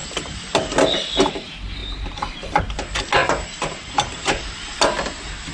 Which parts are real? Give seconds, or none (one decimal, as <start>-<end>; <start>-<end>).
0.0-1.8; 2.6-3.2; 4.4-5.5